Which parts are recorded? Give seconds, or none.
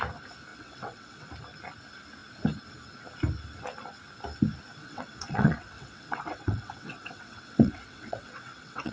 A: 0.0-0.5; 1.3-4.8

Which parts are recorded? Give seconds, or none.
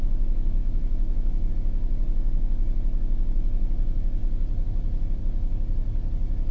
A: 0.0-0.6; 1.5-6.5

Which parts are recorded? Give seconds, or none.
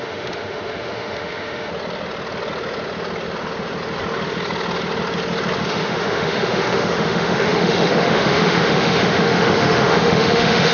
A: 1.7-5.7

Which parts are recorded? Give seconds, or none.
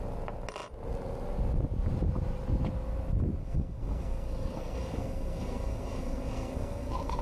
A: 0.0-3.4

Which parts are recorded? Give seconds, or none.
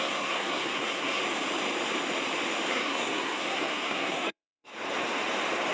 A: 1.2-2.7; 4.7-5.7